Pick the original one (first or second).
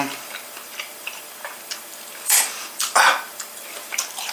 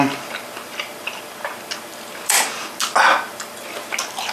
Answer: second